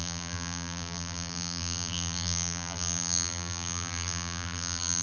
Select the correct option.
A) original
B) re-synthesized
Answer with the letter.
B